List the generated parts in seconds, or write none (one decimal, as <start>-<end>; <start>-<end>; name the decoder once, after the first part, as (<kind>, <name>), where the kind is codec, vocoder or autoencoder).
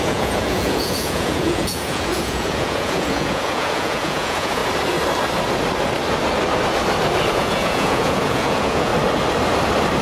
0.0-4.6 (vocoder, Vocos); 7.3-8.9